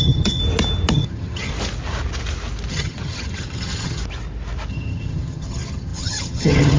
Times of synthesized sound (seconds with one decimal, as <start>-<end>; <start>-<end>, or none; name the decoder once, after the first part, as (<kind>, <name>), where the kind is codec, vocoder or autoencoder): 0.0-0.4 (vocoder, HiFi-GAN); 0.9-1.5; 2.7-4.0; 4.7-6.8